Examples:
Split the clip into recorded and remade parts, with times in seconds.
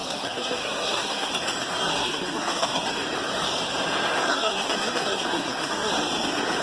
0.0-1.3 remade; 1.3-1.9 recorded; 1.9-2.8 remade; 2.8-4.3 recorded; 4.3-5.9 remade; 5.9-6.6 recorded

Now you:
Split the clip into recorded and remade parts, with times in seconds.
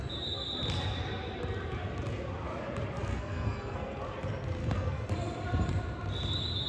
0.0-3.1 recorded; 3.1-4.0 remade; 4.0-4.6 recorded; 4.6-5.1 remade; 5.1-6.7 recorded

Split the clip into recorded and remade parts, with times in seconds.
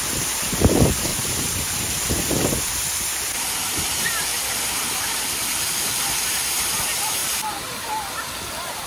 0.0-4.3 remade; 4.3-4.9 recorded; 4.9-8.9 remade